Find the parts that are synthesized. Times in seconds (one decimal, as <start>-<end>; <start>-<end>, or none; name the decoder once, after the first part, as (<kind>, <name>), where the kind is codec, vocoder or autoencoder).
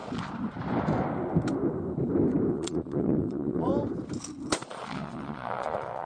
2.5-3.7 (vocoder, Vocos); 4.5-6.0